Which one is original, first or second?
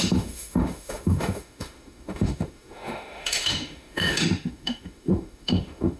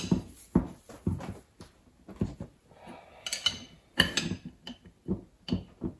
second